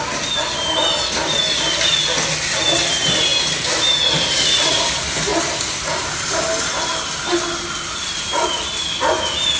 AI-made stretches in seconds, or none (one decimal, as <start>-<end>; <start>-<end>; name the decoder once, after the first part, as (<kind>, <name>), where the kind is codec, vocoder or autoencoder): none